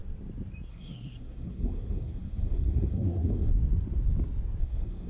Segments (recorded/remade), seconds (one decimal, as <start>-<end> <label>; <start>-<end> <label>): 0.0-0.7 recorded; 0.7-3.5 remade; 3.5-4.6 recorded; 4.6-5.1 remade